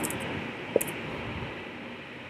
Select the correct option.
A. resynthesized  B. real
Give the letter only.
B